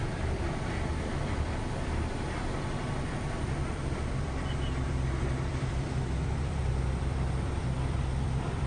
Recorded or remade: remade